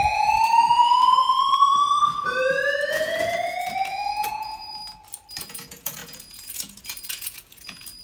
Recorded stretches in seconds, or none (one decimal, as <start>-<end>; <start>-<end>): 1.7-2.9; 4.8-5.4